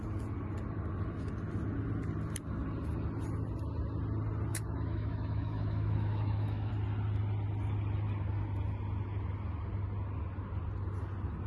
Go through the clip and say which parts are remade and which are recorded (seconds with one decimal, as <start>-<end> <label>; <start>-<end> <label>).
0.0-4.5 recorded; 4.5-6.7 remade; 6.7-11.5 recorded